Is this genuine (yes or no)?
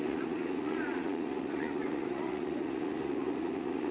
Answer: no